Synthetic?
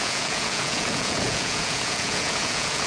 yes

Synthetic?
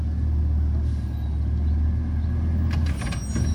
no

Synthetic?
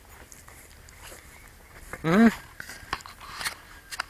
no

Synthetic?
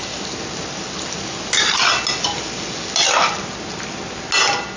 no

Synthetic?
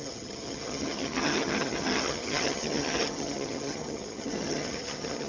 yes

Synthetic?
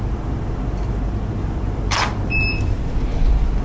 yes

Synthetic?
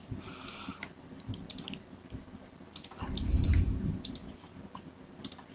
no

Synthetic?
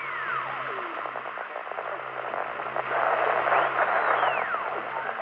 no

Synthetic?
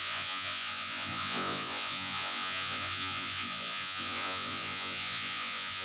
yes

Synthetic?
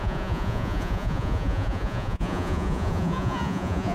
yes